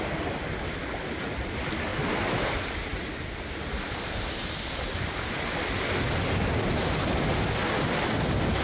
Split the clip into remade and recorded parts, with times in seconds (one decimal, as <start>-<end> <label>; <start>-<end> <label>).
0.0-7.6 recorded; 7.6-8.6 remade